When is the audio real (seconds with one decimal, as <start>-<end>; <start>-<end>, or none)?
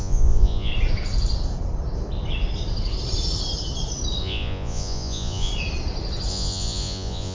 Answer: 0.7-4.2; 5.5-6.3